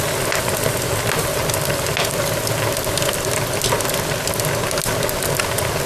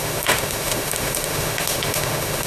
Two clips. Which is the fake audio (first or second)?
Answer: second